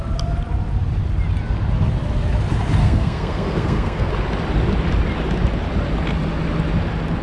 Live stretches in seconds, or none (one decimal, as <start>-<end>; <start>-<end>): 0.0-2.8; 4.1-7.2